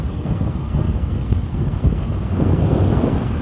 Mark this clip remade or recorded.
remade